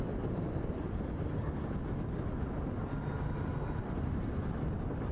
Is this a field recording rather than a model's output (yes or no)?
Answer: yes